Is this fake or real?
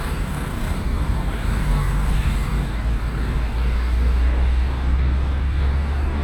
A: fake